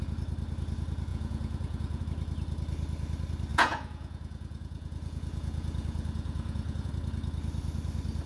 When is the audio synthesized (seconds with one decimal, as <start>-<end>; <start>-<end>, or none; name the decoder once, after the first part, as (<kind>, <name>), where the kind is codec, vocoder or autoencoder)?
1.1-2.0 (vocoder, Vocos); 3.5-6.9